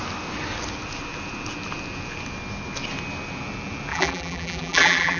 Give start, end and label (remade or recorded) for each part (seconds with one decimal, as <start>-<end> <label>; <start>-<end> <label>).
0.0-3.9 recorded; 3.9-5.2 remade